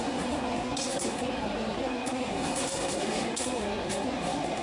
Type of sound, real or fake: fake